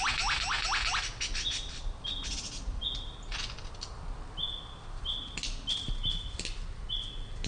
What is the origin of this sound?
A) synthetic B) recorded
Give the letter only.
B